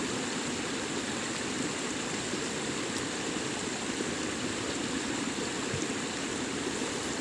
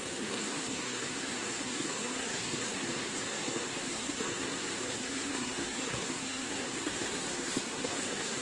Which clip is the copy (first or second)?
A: second